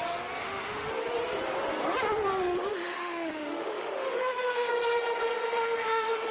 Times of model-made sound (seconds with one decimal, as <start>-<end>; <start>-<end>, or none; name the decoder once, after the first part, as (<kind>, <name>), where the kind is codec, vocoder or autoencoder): 0.4-0.9 (autoencoder, DAC-VAE); 2.7-4.7; 5.4-6.3